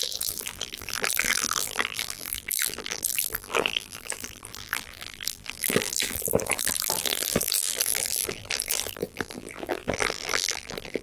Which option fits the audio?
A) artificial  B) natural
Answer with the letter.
A